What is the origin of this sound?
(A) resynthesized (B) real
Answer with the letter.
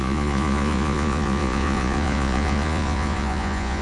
A